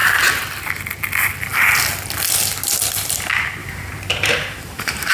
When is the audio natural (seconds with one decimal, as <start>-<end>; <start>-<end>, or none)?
0.0-3.6